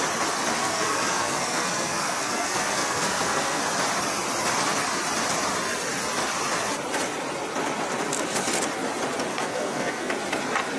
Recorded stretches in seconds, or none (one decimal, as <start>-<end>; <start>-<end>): 0.0-0.6; 3.6-9.3; 10.1-10.8